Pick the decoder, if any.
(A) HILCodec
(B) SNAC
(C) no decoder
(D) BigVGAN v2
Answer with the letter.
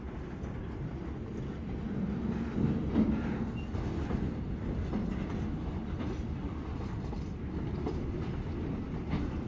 C